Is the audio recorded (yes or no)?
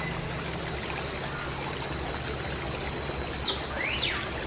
yes